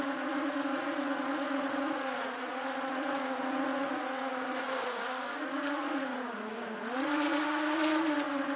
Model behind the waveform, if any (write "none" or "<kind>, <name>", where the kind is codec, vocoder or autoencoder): vocoder, Vocos